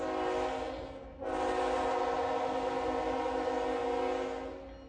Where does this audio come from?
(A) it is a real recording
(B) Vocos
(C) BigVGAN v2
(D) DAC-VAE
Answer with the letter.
A